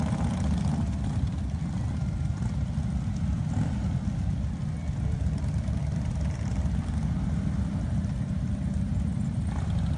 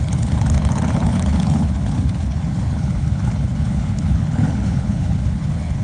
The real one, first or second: first